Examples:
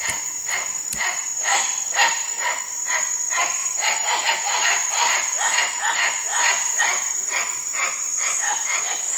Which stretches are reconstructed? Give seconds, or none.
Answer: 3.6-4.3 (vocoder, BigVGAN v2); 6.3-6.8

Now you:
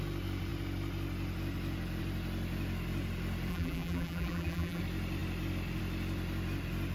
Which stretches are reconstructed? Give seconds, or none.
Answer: 3.5-4.8 (vocoder, BigVGAN v2)

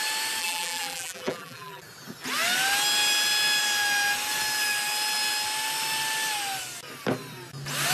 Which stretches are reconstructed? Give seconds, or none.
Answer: 0.4-1.8 (vocoder, BigVGAN v2)

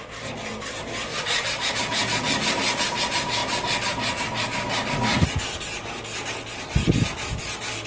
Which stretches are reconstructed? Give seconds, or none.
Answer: 1.1-1.7 (vocoder, BigVGAN v2)

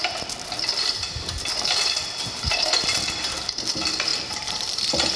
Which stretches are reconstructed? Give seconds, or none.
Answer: none

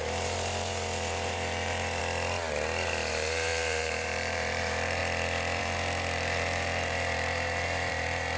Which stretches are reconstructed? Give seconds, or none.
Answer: 0.0-2.0 (vocoder, BigVGAN v2); 3.1-5.0; 5.6-8.4

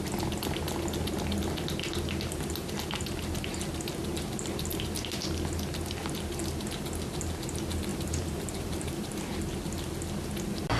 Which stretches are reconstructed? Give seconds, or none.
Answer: 7.9-9.3 (vocoder, BigVGAN v2)

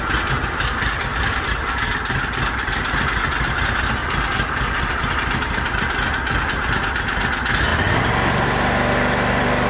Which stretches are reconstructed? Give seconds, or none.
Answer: 4.0-5.0 (vocoder, BigVGAN v2); 7.7-9.7